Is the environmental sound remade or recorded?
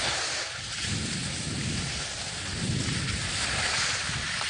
recorded